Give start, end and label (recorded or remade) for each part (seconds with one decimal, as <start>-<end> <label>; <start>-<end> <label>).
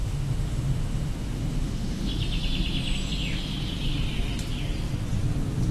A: 0.0-2.1 remade; 2.1-5.7 recorded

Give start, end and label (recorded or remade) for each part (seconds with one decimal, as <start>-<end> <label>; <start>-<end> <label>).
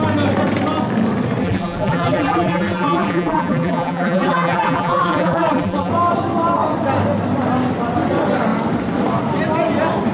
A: 0.0-1.4 recorded; 1.4-5.9 remade; 5.9-10.1 recorded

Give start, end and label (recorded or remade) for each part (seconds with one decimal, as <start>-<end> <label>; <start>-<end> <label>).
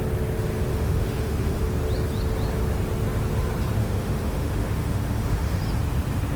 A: 0.0-0.7 recorded; 0.7-1.6 remade; 1.6-3.8 recorded; 3.8-5.6 remade; 5.6-6.4 recorded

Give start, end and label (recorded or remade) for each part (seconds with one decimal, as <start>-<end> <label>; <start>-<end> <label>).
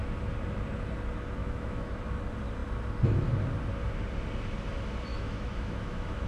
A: 0.0-1.4 recorded; 1.4-1.9 remade; 1.9-5.1 recorded; 5.1-6.3 remade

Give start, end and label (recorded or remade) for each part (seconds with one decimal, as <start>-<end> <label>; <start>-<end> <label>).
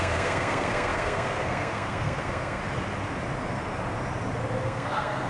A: 0.0-2.6 remade; 2.6-4.6 recorded; 4.6-5.3 remade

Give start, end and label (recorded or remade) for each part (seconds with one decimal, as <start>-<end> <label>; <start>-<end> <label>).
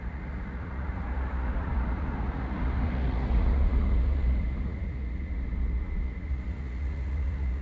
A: 0.0-7.6 remade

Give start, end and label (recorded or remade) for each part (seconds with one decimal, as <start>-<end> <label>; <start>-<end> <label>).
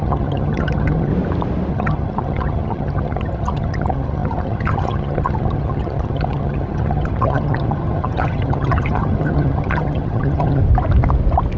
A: 0.0-1.1 remade; 1.1-1.7 recorded; 1.7-10.6 remade; 10.6-11.6 recorded